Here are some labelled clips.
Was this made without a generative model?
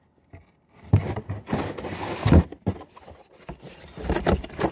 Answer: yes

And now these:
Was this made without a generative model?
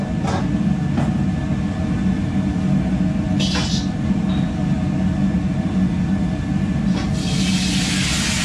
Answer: yes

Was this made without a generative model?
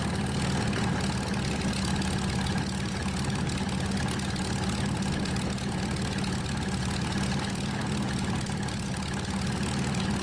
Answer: yes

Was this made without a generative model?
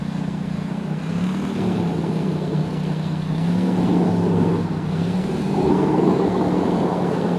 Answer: no